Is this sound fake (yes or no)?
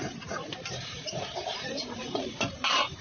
yes